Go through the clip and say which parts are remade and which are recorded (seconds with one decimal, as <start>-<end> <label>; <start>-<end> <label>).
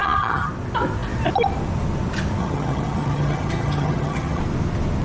0.0-0.5 remade; 0.5-2.4 recorded; 2.4-4.4 remade; 4.4-5.0 recorded